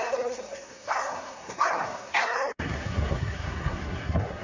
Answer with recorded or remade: remade